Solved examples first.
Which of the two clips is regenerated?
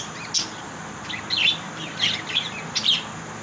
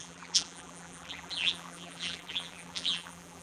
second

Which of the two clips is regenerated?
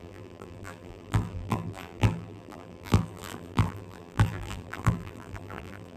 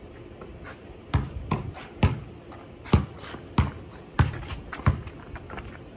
first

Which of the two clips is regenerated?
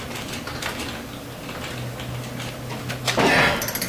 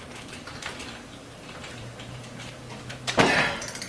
second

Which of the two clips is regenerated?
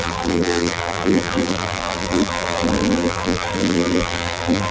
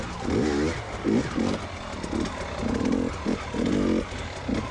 first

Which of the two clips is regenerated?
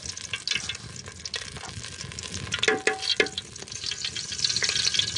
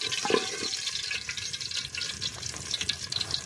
second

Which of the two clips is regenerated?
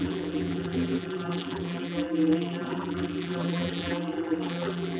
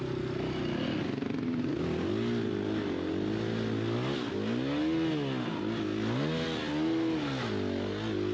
first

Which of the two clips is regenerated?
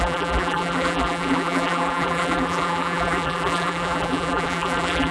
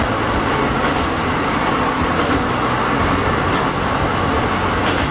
first